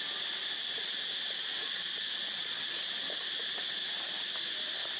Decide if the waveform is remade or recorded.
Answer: recorded